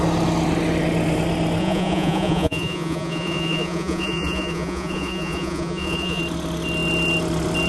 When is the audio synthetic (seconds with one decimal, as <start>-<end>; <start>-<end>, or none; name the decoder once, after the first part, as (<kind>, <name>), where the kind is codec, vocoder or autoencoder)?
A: 1.6-6.2 (vocoder, Vocos)